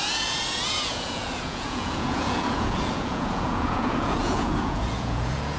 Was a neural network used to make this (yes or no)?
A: yes